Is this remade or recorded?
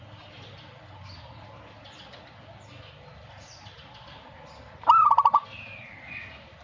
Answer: recorded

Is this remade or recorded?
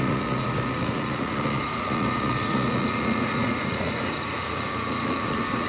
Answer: remade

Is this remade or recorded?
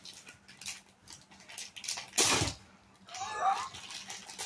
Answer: recorded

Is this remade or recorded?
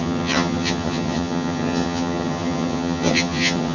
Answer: remade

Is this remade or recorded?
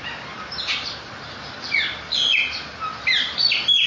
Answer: recorded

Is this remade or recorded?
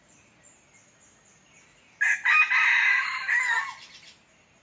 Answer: recorded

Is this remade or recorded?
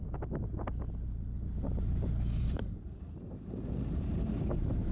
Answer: remade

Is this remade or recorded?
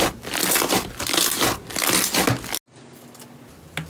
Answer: recorded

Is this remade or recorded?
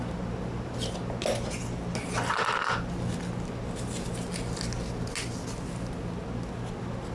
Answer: recorded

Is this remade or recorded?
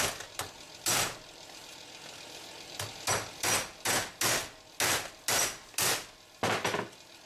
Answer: recorded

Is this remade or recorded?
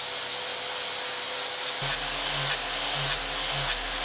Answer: recorded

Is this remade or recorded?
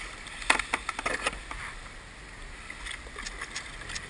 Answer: recorded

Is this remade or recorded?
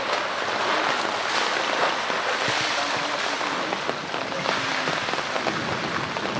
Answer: recorded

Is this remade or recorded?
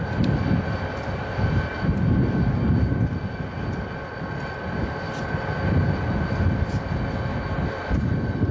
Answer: recorded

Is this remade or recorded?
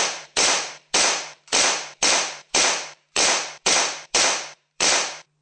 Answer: remade